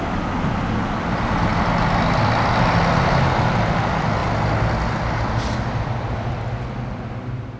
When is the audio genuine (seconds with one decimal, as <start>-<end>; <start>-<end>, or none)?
0.0-7.6

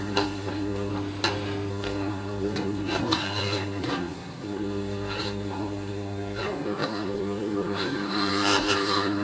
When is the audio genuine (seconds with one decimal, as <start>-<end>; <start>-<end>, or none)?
0.9-1.7

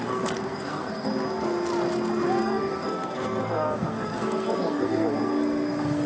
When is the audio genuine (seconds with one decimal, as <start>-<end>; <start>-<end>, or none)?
1.1-2.4

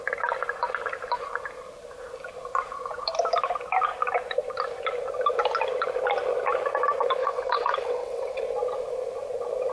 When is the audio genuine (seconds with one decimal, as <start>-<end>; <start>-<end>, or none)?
0.0-7.2; 8.4-9.7

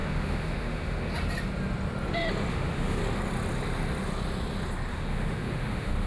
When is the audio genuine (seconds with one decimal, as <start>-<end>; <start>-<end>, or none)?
1.1-2.5; 3.0-4.9

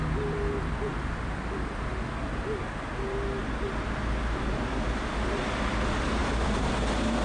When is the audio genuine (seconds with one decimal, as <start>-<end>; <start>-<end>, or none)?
0.0-6.2; 6.7-7.2

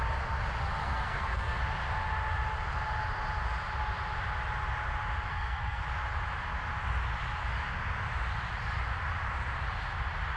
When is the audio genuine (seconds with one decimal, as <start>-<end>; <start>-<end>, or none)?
0.0-0.8; 1.6-5.3; 5.8-10.4

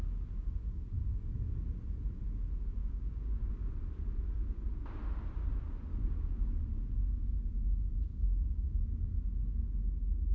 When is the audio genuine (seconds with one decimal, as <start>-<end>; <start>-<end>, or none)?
0.0-2.8; 3.5-5.9; 6.5-8.1; 8.8-10.3